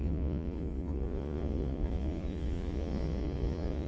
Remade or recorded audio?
remade